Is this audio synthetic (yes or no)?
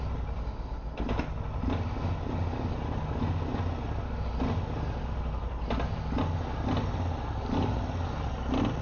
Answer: no